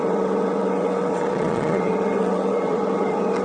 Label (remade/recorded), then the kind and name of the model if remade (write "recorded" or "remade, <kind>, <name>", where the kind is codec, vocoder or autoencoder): remade, vocoder, WaveNeXt